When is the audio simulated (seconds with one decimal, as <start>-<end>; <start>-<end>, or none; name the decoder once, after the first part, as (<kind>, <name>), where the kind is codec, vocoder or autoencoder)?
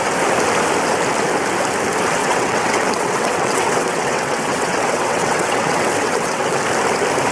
2.2-6.6 (vocoder, WaveNeXt)